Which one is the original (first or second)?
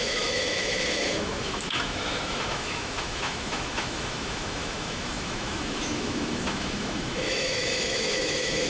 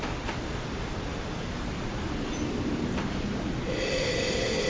second